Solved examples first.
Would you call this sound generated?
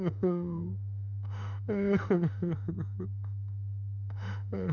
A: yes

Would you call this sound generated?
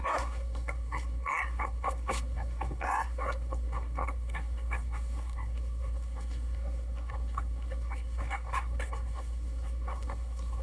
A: yes